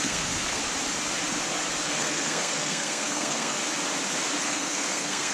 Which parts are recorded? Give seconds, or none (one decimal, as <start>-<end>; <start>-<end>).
0.6-1.8; 3.6-4.4